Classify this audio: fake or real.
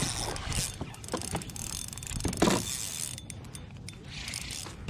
real